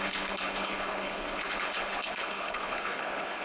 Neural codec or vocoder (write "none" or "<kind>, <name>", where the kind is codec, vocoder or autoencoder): codec, HILCodec